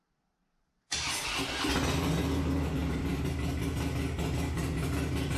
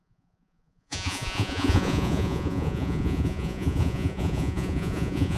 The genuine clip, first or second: first